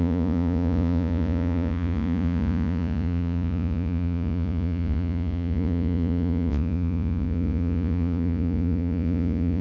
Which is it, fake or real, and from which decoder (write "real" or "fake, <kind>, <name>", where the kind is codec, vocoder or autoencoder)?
fake, vocoder, Vocos